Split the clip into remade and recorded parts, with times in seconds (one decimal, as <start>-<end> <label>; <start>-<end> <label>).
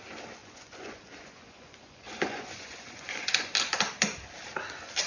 0.0-0.4 recorded; 0.4-3.5 remade; 3.5-5.1 recorded